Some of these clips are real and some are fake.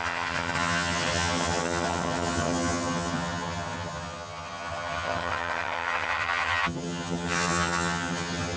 fake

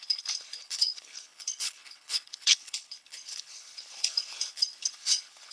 fake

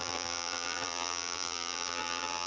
fake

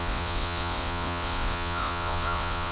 fake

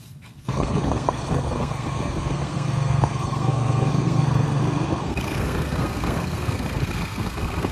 fake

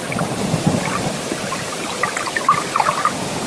fake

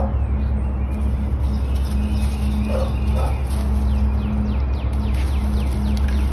real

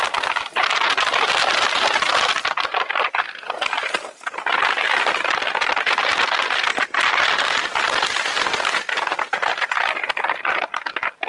real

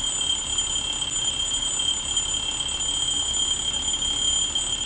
real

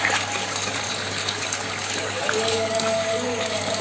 fake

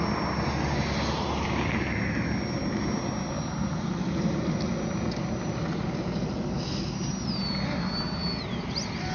real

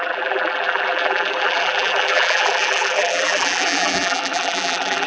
fake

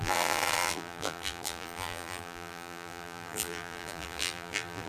fake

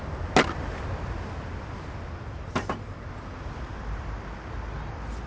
real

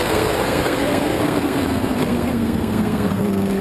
fake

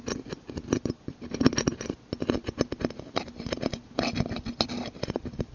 real